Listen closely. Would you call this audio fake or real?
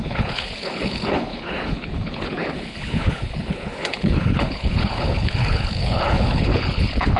fake